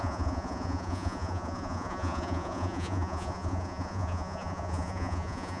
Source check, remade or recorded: remade